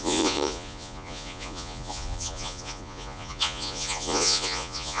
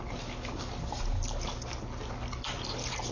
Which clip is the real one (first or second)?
second